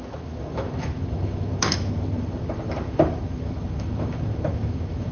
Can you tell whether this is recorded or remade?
remade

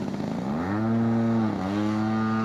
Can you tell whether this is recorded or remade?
recorded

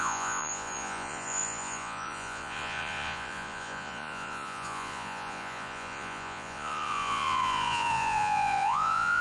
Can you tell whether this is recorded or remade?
remade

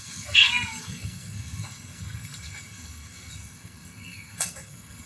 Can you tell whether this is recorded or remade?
remade